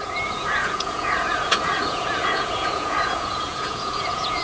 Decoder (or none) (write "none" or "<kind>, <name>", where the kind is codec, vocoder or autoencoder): vocoder, Vocos